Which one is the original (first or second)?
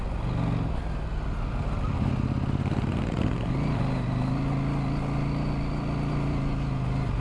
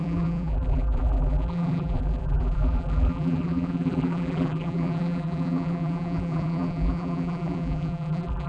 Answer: first